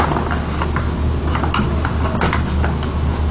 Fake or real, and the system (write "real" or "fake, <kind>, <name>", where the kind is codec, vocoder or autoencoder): real